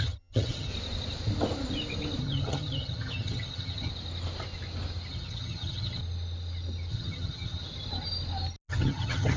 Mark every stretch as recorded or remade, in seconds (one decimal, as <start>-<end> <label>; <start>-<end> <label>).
0.0-0.7 remade; 0.7-2.2 recorded; 2.2-3.9 remade; 3.9-5.1 recorded; 5.1-6.0 remade; 6.0-6.9 recorded; 6.9-7.6 remade; 7.6-8.7 recorded; 8.7-9.4 remade